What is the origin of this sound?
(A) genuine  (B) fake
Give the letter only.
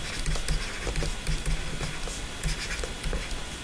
A